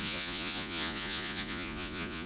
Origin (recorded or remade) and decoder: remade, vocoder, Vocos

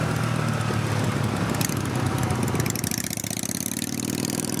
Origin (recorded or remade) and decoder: recorded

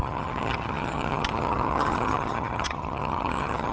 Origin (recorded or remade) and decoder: remade, vocoder, HiFi-GAN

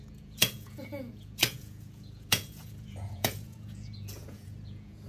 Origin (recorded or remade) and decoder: remade, vocoder, Vocos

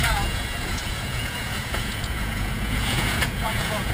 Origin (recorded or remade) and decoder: remade, vocoder, Vocos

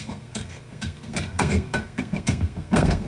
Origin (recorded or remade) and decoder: remade, codec, SNAC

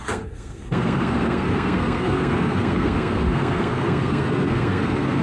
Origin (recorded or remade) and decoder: remade, codec, SNAC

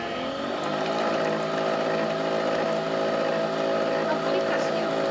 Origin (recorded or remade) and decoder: recorded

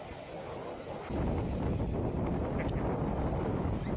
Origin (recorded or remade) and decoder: recorded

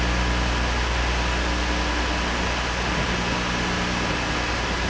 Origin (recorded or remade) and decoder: recorded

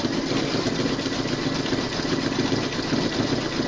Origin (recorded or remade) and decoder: recorded